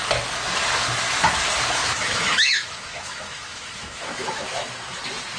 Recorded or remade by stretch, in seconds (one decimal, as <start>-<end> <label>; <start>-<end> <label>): 0.0-1.8 recorded; 1.8-5.0 remade; 5.0-5.4 recorded